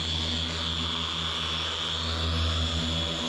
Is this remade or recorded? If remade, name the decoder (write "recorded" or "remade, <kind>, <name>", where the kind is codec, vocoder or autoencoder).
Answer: recorded